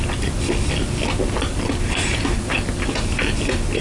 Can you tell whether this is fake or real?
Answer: real